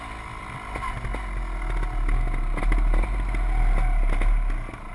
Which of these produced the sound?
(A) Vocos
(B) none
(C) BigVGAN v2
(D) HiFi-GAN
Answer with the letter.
B